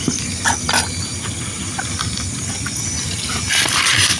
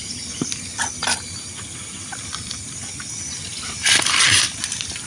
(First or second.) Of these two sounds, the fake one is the second